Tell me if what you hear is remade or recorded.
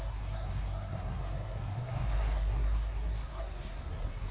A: remade